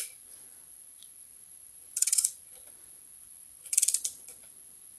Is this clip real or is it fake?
fake